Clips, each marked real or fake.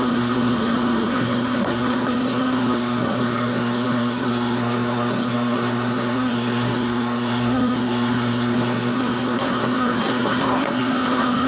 fake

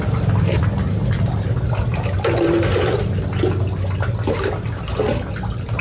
real